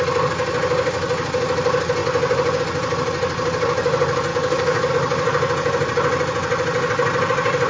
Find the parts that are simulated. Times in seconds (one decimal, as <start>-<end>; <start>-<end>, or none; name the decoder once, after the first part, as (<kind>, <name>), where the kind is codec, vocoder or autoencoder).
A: 4.3-4.9 (codec, DAC)